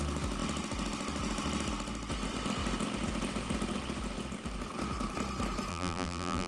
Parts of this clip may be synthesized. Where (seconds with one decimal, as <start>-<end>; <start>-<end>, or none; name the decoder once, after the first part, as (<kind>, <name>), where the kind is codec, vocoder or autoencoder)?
5.7-6.5 (vocoder, BigVGAN v2)